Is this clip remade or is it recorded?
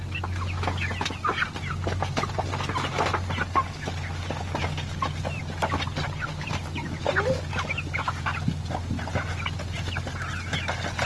recorded